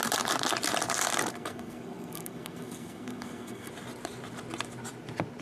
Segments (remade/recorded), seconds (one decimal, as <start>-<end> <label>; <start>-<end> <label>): 0.0-1.3 recorded; 1.3-3.7 remade; 3.7-5.4 recorded